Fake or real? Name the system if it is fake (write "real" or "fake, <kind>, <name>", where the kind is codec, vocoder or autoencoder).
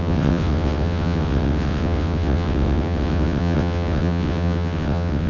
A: fake, vocoder, WaveNeXt